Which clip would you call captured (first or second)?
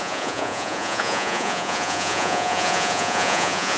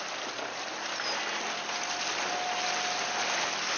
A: second